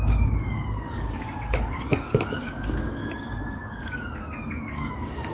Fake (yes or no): yes